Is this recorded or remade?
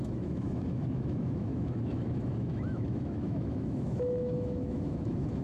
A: remade